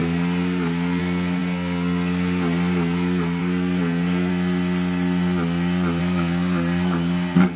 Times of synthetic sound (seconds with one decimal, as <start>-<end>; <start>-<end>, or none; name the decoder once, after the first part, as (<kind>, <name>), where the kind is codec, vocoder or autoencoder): 0.0-4.3 (codec, SNAC); 6.0-7.6